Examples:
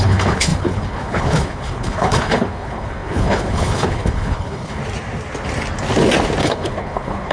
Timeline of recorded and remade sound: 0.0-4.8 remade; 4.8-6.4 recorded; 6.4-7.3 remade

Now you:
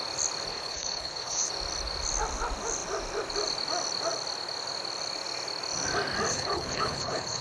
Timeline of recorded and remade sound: 0.0-0.5 recorded; 0.5-1.5 remade; 1.5-6.3 recorded; 6.3-7.4 remade

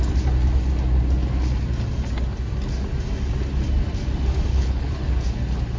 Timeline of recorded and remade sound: 0.0-4.5 recorded; 4.5-5.1 remade; 5.1-5.8 recorded